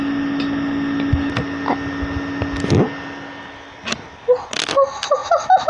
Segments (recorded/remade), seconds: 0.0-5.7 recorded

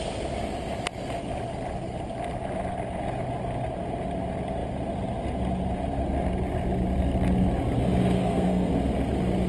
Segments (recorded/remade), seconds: 0.0-8.2 recorded; 8.2-8.7 remade; 8.7-9.5 recorded

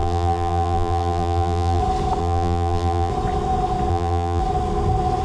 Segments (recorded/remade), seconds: 0.0-1.8 remade; 1.8-2.2 recorded; 2.2-3.1 remade; 3.1-3.9 recorded; 3.9-4.4 remade; 4.4-5.2 recorded

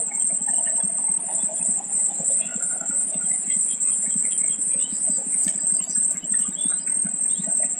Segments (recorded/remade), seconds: 0.0-2.5 recorded; 2.5-3.3 remade; 3.3-7.8 recorded

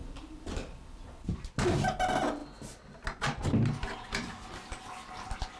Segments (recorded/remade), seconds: 0.0-5.6 recorded